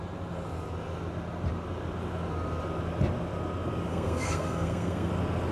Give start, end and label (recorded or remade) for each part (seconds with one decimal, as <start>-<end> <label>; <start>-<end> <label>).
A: 0.0-3.9 recorded; 3.9-5.1 remade; 5.1-5.5 recorded